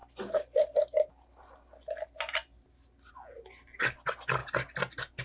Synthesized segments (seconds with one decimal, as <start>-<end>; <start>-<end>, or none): none